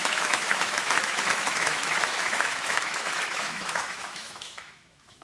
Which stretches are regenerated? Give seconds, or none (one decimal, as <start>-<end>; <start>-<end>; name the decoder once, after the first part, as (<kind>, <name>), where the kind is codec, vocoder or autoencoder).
0.0-5.2 (autoencoder, DAC-VAE)